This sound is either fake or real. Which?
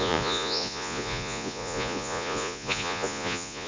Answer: fake